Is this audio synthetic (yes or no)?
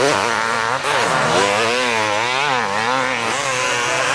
no